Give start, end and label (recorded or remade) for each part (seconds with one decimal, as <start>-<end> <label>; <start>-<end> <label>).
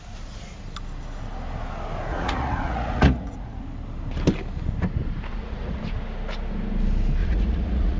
0.0-2.1 recorded; 2.1-3.6 remade; 3.6-5.3 recorded; 5.3-5.8 remade; 5.8-7.2 recorded; 7.2-8.0 remade